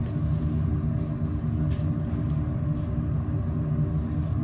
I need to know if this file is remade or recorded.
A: recorded